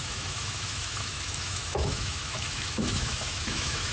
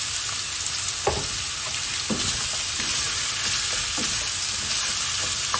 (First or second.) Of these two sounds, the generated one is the first